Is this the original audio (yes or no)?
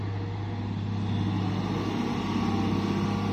yes